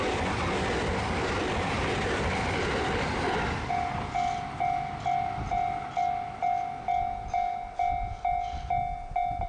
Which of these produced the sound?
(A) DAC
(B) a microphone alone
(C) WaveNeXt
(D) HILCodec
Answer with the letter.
B